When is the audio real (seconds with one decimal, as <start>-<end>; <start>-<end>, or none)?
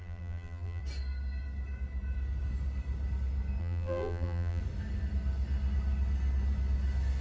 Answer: 0.8-3.6; 4.6-7.2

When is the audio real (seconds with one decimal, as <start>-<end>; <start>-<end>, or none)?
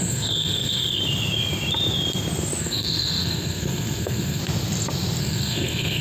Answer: 1.0-2.6; 4.4-5.2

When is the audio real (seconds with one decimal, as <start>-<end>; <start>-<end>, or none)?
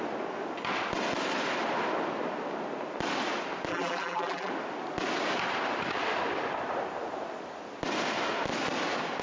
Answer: 0.0-3.7; 4.5-9.2